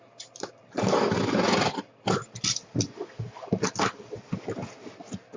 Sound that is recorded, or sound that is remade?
recorded